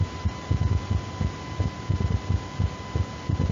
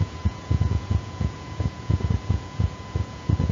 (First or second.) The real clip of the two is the first